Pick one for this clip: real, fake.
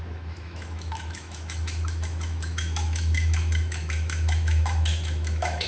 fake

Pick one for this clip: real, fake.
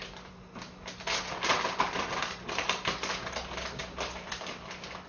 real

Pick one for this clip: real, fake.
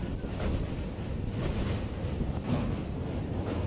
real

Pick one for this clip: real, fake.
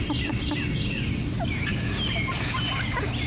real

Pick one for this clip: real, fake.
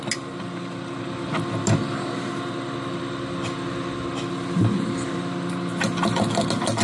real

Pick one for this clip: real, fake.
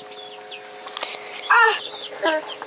real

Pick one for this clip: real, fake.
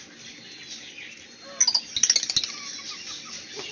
real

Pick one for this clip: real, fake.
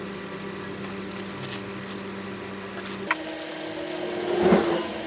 real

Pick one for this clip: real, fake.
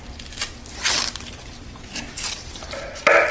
real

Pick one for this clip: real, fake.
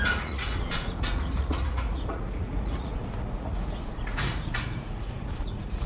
fake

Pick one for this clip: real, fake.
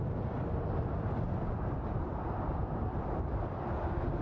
real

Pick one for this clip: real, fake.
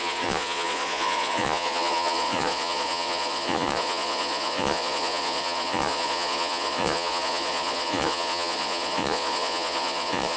fake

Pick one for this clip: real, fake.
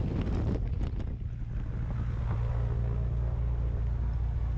real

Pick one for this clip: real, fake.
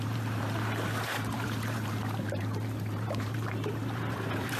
fake